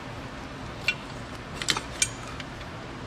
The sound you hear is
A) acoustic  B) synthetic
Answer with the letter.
A